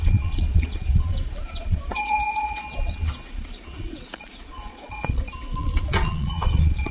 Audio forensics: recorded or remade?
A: remade